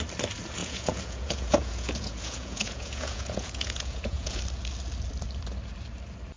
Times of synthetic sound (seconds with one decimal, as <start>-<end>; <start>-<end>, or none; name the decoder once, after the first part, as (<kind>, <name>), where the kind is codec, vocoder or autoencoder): 0.6-4.4 (vocoder, Vocos)